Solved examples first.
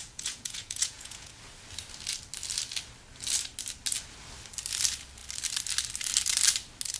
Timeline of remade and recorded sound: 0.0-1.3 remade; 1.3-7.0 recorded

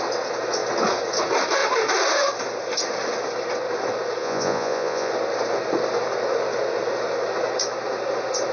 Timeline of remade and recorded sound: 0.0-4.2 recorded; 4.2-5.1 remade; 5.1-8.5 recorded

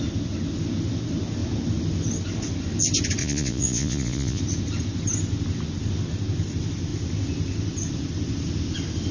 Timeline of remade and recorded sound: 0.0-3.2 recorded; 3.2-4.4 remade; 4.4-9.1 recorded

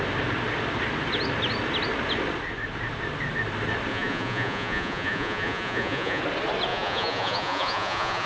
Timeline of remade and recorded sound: 0.0-3.9 recorded; 3.9-6.2 remade; 6.2-6.7 recorded; 6.7-8.3 remade

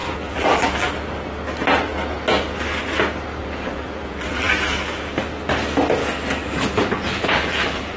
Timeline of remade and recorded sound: 0.0-0.9 remade; 0.9-3.4 recorded; 3.4-5.1 remade; 5.1-6.0 recorded; 6.0-8.0 remade

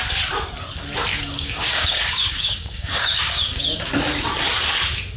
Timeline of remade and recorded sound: 0.0-1.1 recorded; 1.1-3.9 remade; 3.9-5.2 recorded

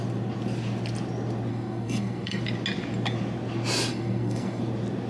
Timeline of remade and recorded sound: 0.0-1.5 recorded; 1.5-2.4 remade; 2.4-3.9 recorded; 3.9-4.6 remade; 4.6-5.1 recorded

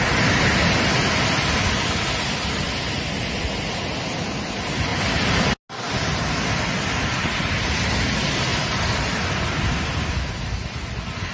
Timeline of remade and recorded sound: 0.0-11.3 recorded